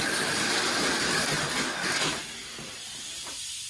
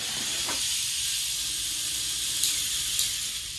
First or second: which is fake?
second